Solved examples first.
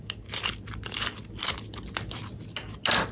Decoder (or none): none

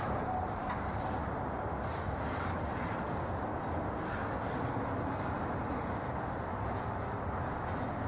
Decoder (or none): none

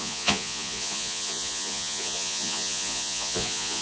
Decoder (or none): vocoder, Vocos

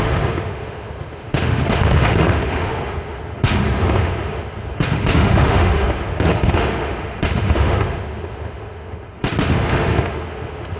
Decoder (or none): autoencoder, DAC-VAE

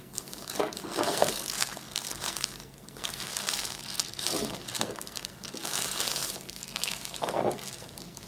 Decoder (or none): codec, SNAC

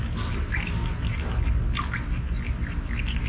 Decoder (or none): none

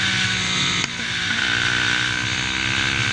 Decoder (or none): none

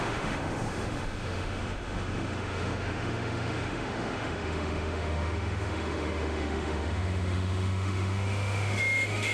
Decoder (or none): autoencoder, DAC-VAE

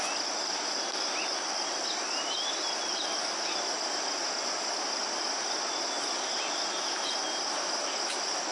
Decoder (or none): none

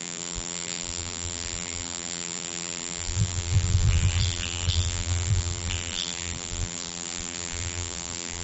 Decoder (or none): vocoder, BigVGAN v2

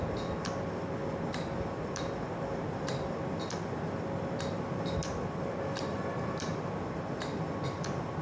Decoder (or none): none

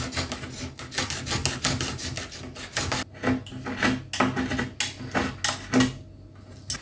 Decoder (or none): none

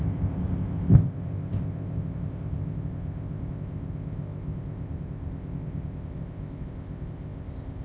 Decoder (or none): codec, ZipCodec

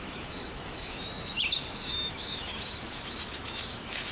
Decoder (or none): autoencoder, DAC-VAE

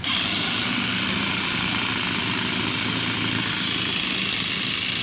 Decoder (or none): none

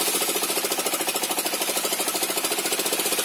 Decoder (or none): none